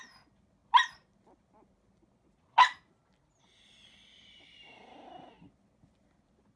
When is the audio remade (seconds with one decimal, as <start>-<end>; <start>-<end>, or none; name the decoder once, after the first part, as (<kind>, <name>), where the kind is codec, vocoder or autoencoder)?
none